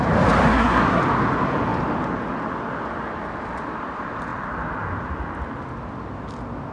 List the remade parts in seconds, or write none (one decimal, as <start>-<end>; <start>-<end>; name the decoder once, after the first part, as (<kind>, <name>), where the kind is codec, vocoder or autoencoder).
0.5-1.0 (codec, SNAC)

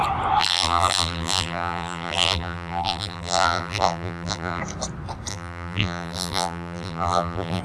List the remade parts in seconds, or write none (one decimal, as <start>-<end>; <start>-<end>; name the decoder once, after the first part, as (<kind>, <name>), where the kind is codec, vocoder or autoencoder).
0.4-4.6 (vocoder, BigVGAN v2); 5.3-7.6